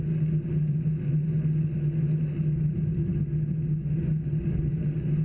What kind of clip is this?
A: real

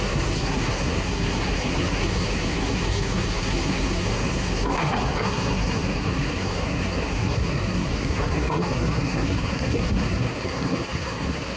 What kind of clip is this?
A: fake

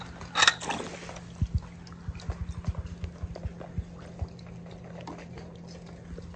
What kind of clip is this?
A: real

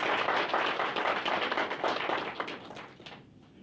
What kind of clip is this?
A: real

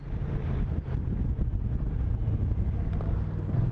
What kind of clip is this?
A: real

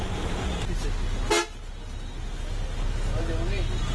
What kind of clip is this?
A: real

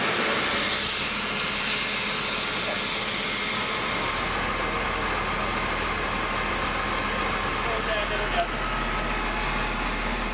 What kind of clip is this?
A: real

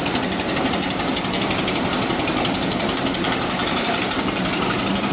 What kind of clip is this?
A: fake